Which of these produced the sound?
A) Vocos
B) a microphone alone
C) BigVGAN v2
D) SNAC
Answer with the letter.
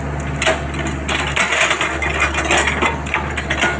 B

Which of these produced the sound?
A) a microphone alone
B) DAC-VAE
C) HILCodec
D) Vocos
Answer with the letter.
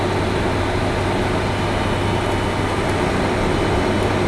A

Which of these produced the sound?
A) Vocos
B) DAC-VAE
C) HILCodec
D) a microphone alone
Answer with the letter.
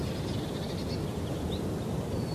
D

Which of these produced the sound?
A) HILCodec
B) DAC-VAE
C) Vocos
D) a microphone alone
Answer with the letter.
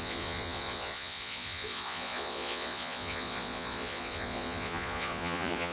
C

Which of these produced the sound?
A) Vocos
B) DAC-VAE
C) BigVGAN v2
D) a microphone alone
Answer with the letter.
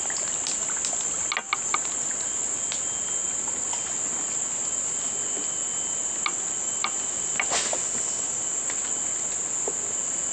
D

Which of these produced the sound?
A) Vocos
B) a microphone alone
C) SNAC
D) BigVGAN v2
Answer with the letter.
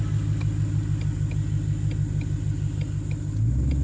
B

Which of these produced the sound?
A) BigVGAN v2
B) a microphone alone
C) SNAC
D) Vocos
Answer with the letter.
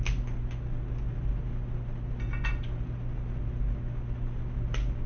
B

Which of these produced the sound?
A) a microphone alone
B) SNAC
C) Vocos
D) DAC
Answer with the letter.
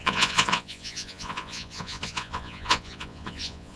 C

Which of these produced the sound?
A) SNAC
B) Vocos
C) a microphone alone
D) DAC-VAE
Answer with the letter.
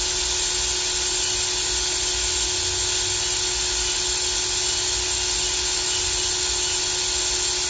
C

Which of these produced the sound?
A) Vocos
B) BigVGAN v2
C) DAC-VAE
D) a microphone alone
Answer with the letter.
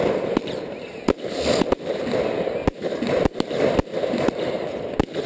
D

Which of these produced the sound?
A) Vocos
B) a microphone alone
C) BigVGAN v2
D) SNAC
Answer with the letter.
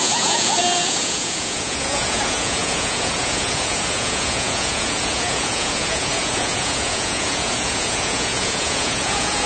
A